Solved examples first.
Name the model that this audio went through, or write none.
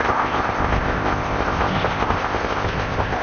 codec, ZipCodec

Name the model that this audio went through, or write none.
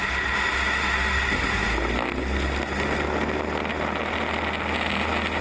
none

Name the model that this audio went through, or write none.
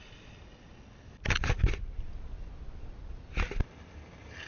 none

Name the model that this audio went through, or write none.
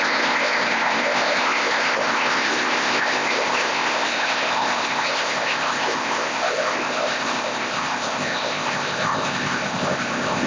codec, ZipCodec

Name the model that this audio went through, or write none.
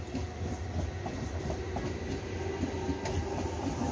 none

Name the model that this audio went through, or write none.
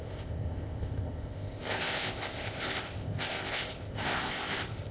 codec, ZipCodec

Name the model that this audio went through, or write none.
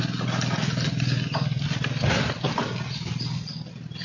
none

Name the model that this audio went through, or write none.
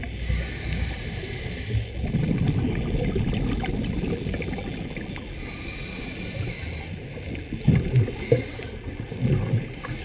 none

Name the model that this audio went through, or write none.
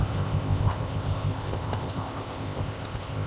codec, ZipCodec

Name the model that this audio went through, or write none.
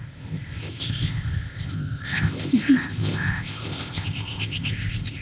codec, ZipCodec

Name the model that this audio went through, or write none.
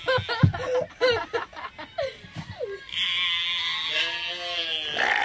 none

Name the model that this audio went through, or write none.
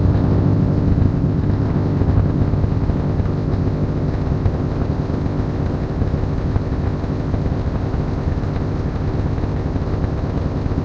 codec, ZipCodec